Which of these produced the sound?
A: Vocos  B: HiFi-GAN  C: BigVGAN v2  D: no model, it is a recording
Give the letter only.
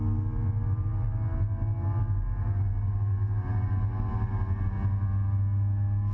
D